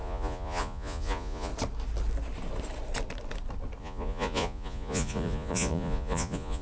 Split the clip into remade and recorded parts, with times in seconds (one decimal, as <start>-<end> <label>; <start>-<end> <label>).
0.0-1.5 remade; 1.5-3.8 recorded; 3.8-6.6 remade